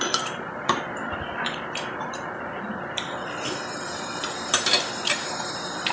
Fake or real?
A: fake